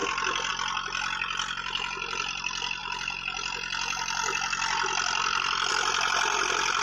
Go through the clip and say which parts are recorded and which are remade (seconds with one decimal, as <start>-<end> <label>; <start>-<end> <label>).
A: 0.0-6.8 recorded